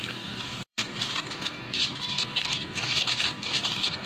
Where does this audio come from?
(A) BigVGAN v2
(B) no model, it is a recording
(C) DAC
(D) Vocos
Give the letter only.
C